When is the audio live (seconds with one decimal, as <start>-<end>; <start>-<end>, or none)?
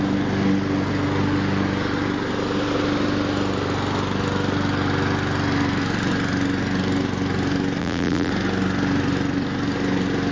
0.0-7.8; 8.3-10.3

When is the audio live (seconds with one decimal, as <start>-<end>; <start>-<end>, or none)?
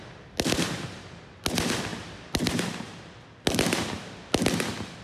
0.0-5.0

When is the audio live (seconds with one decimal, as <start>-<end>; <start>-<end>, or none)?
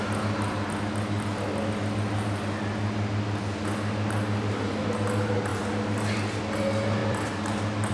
0.0-7.0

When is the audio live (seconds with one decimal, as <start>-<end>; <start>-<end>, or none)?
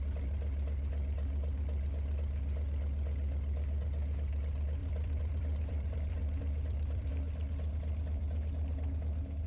0.0-4.8; 7.1-9.5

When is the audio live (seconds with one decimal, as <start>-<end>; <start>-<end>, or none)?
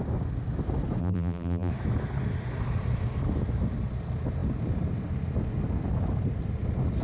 0.0-1.0; 1.7-7.0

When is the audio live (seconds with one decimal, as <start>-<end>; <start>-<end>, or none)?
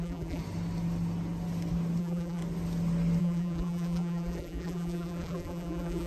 0.4-2.0; 2.4-3.2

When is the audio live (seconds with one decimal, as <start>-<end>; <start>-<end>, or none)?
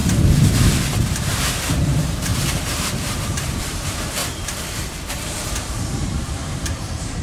0.0-1.0; 4.2-5.1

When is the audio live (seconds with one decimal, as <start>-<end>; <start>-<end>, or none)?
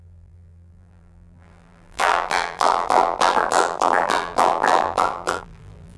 none